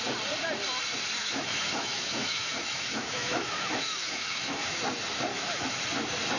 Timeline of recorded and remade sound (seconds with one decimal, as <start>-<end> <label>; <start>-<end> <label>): 0.0-1.2 recorded; 1.2-4.8 remade; 4.8-5.3 recorded; 5.3-5.8 remade; 5.8-6.4 recorded